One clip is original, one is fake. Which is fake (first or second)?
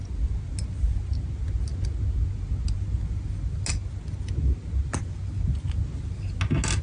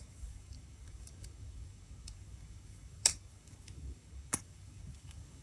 second